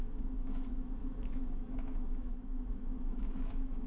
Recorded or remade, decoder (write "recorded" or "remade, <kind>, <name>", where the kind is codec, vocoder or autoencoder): remade, autoencoder, DAC-VAE